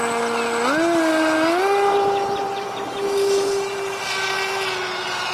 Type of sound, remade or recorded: recorded